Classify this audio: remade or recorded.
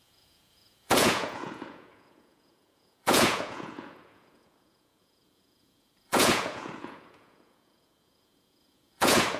remade